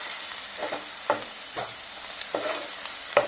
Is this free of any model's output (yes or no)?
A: no